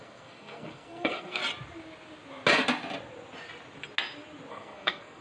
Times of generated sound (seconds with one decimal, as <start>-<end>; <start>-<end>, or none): 0.0-1.4; 4.5-5.2